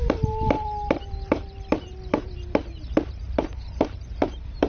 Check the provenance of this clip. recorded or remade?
remade